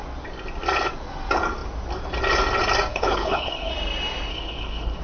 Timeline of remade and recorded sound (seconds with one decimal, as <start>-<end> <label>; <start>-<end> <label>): 0.0-2.9 recorded; 2.9-3.7 remade; 3.7-4.3 recorded; 4.3-5.0 remade